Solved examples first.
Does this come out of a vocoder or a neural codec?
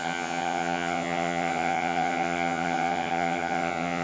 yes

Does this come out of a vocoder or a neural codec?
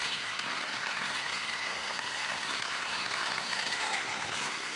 yes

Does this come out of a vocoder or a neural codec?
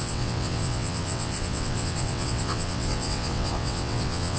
yes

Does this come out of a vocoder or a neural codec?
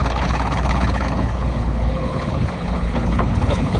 yes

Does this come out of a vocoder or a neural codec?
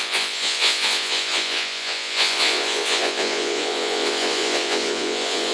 yes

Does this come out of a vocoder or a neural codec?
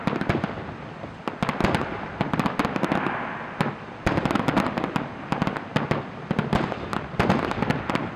no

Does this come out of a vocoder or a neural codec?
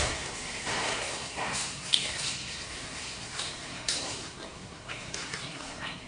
yes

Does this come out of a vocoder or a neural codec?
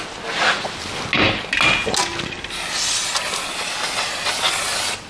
no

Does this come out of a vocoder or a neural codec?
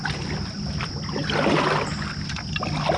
no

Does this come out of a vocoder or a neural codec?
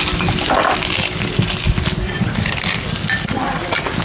no